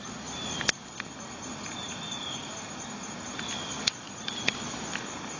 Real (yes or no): yes